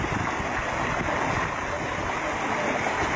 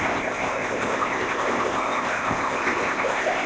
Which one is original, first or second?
first